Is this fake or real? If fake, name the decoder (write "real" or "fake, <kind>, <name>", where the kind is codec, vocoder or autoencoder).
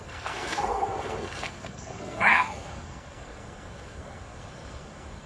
fake, codec, SNAC